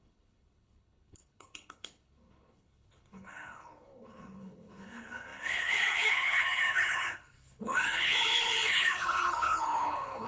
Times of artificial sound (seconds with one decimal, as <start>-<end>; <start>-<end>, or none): 0.0-10.3